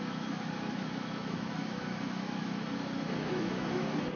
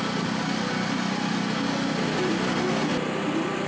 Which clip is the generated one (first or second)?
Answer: first